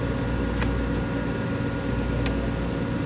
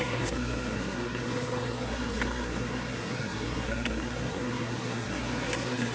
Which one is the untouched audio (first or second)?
first